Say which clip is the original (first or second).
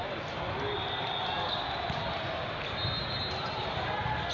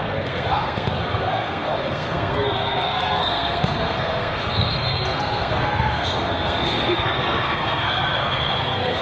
first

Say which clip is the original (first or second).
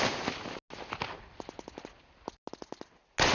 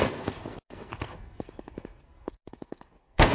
first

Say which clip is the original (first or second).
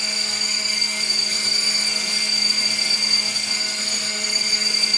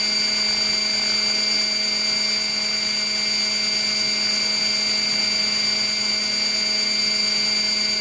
second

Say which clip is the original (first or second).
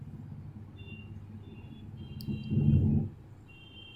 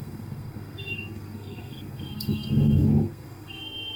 first